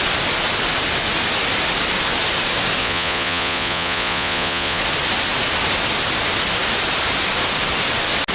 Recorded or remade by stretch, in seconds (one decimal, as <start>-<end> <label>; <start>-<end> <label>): 0.0-2.8 recorded; 2.8-4.8 remade; 4.8-8.3 recorded